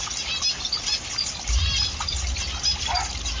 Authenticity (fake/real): real